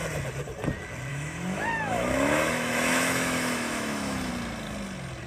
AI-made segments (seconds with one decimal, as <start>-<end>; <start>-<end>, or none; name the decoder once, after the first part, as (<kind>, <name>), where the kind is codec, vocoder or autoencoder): 1.1-4.3 (autoencoder, DAC-VAE)